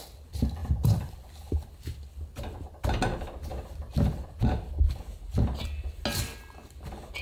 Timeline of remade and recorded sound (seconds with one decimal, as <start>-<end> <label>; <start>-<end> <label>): 0.0-0.6 recorded; 0.6-1.5 remade; 1.5-3.5 recorded; 3.5-5.0 remade; 5.0-7.2 recorded